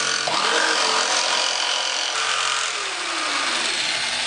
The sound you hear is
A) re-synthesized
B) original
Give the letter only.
B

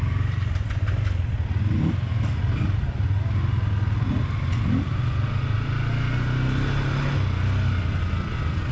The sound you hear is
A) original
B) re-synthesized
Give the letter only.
A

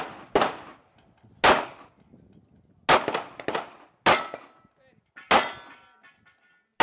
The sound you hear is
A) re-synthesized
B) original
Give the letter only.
B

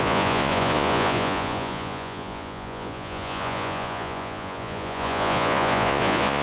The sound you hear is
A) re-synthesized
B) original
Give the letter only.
A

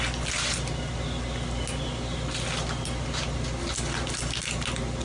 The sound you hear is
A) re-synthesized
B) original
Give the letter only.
B